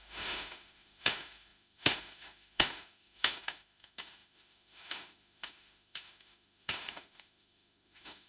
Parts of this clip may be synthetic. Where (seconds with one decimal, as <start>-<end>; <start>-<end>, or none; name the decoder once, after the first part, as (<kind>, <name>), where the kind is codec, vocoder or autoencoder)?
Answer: 0.0-8.3 (autoencoder, DAC-VAE)